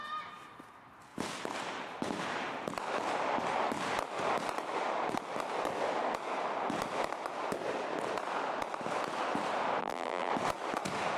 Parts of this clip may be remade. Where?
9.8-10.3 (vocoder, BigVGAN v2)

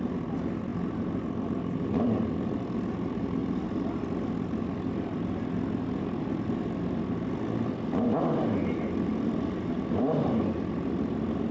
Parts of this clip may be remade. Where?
none

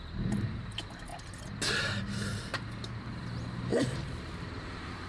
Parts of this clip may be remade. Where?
0.0-1.1 (vocoder, BigVGAN v2); 1.8-2.3; 2.9-5.1

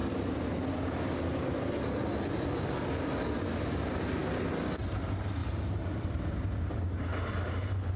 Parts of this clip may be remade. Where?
5.4-6.7 (vocoder, BigVGAN v2)

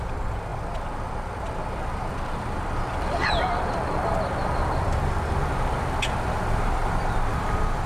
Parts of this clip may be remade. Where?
none

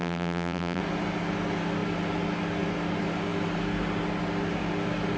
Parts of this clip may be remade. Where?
0.0-0.8 (vocoder, BigVGAN v2)

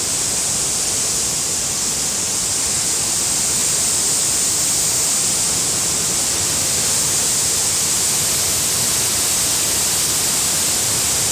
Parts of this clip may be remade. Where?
3.6-4.4 (vocoder, BigVGAN v2)

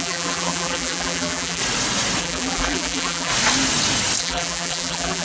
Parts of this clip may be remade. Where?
0.0-1.6 (vocoder, BigVGAN v2); 2.2-3.3; 4.2-5.2